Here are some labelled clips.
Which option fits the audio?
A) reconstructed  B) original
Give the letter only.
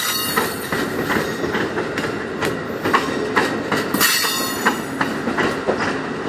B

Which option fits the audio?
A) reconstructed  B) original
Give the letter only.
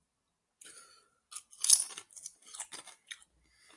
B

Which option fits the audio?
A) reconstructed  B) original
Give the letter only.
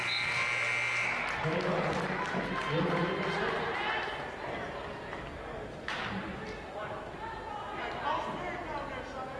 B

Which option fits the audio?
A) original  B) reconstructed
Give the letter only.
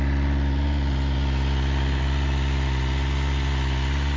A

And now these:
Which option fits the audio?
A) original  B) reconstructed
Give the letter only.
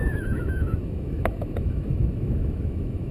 B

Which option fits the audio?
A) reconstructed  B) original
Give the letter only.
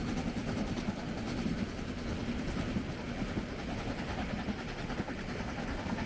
B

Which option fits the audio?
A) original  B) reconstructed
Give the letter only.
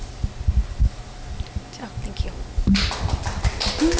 A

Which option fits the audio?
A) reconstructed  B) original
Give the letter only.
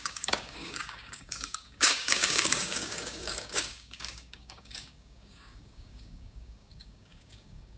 A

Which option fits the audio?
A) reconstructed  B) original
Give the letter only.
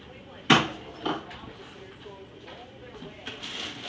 B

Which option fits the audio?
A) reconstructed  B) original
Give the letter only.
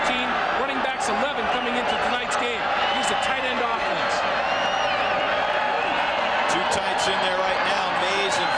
B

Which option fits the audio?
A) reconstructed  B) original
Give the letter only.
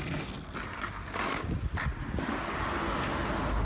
B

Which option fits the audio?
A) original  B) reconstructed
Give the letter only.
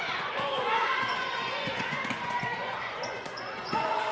B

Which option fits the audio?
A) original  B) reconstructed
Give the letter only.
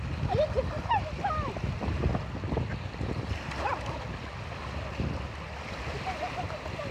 A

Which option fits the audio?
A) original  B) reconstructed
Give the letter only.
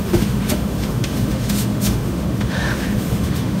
B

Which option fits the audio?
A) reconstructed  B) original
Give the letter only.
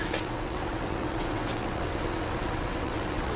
A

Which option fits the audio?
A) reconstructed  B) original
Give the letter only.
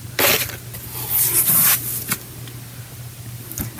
B